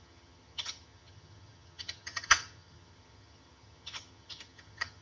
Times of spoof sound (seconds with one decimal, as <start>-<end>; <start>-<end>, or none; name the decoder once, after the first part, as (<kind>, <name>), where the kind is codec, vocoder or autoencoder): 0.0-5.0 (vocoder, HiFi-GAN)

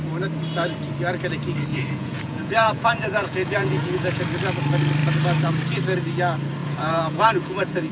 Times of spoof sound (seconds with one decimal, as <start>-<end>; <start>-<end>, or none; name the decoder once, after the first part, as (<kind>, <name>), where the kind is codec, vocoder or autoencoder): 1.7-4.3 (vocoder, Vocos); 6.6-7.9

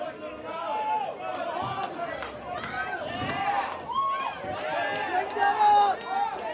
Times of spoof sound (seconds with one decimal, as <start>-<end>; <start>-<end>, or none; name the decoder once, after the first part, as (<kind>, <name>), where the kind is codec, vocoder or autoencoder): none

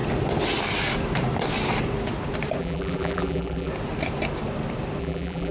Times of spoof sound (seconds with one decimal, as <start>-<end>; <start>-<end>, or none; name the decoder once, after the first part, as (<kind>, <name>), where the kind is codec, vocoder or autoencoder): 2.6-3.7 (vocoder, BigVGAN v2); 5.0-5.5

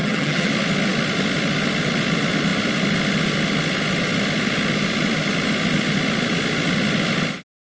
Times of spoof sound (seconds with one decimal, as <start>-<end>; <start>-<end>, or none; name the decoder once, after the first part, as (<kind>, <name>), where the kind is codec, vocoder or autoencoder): 0.0-0.5 (vocoder, HiFi-GAN)

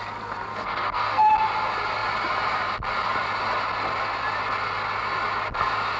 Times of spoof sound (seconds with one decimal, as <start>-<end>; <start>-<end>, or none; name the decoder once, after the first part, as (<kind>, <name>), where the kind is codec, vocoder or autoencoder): 0.5-1.3 (codec, SNAC)